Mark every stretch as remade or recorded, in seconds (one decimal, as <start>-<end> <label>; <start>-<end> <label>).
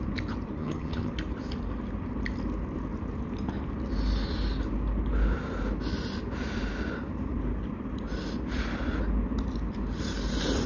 0.0-0.6 recorded; 0.6-1.1 remade; 1.1-10.7 recorded